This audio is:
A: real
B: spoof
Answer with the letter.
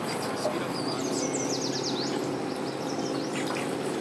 A